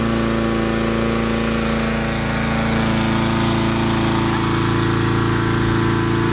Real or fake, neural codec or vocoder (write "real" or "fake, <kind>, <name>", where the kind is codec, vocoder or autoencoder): real